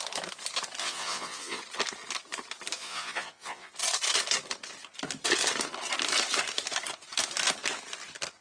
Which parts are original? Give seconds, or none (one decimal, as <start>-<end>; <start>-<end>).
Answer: 0.0-0.8; 1.6-2.8; 3.7-8.4